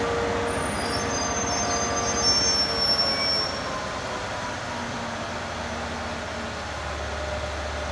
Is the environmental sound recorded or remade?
recorded